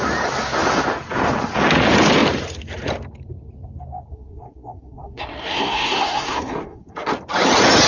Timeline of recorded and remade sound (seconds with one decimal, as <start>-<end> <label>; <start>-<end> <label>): 0.0-4.1 recorded; 4.1-7.1 remade; 7.1-7.9 recorded